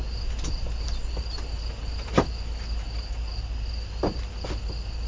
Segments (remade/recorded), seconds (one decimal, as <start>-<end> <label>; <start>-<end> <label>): 0.0-5.1 recorded